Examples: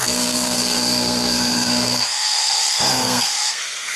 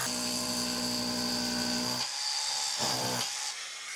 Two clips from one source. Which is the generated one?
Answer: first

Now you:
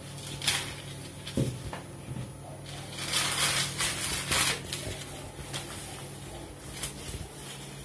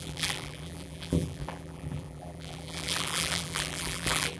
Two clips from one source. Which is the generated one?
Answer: second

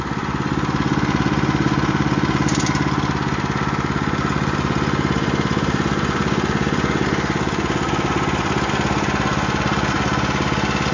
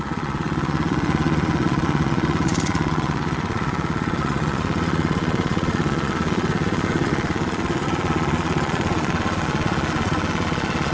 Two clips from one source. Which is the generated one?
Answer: second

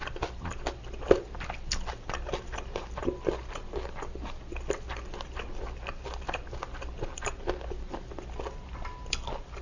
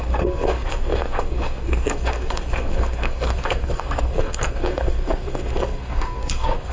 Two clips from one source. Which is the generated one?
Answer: second